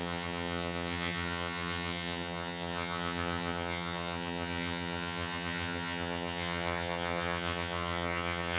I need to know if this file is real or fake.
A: fake